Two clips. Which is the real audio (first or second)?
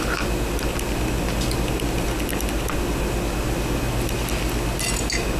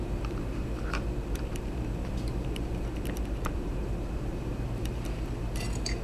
first